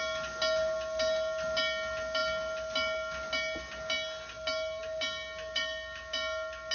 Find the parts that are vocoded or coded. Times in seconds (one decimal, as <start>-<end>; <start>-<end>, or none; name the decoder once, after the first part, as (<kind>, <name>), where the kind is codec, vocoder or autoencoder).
none